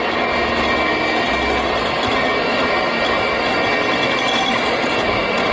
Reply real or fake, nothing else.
real